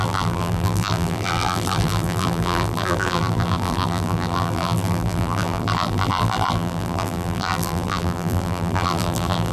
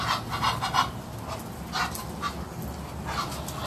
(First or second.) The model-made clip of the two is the first